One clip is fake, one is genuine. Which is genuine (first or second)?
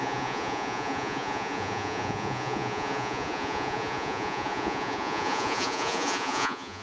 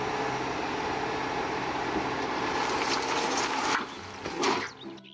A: second